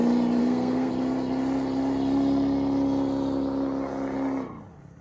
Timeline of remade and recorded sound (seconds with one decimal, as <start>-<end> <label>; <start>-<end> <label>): 0.0-0.4 recorded; 0.4-0.9 remade; 0.9-5.0 recorded

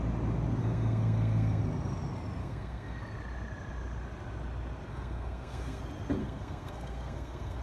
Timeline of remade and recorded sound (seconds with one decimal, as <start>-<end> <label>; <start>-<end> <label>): 0.0-0.6 recorded; 0.6-1.6 remade; 1.6-2.4 recorded; 2.4-3.0 remade; 3.0-4.9 recorded; 4.9-5.8 remade; 5.8-6.2 recorded; 6.2-7.6 remade

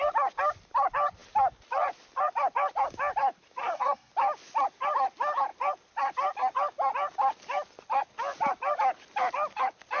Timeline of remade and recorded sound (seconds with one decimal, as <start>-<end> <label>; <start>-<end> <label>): 0.0-3.6 recorded; 3.6-4.1 remade; 4.1-10.0 recorded

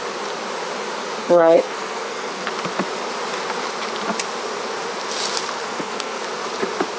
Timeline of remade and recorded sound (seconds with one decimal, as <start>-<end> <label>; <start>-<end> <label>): 0.0-1.2 recorded; 1.2-2.5 remade; 2.5-5.6 recorded; 5.6-6.2 remade; 6.2-7.0 recorded

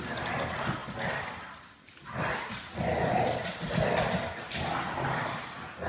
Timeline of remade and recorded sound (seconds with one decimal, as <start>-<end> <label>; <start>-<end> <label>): 0.0-5.9 recorded

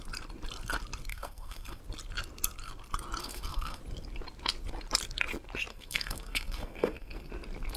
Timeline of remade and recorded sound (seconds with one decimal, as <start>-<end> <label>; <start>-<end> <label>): 0.0-1.1 recorded; 1.1-1.8 remade; 1.8-3.2 recorded; 3.2-3.8 remade; 3.8-5.7 recorded; 5.7-7.3 remade; 7.3-7.8 recorded

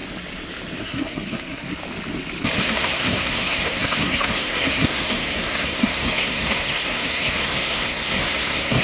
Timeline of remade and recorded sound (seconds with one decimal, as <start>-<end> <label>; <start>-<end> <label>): 0.0-0.8 recorded; 0.8-1.7 remade; 1.7-2.6 recorded; 2.6-8.8 remade

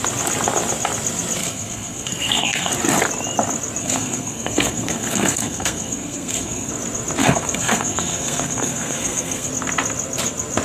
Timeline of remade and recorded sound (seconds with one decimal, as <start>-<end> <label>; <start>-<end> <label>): 0.0-1.4 recorded; 1.4-2.7 remade; 2.7-3.8 recorded; 3.8-6.7 remade; 6.7-7.2 recorded; 7.2-9.5 remade; 9.5-10.6 recorded